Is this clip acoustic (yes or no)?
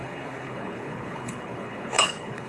no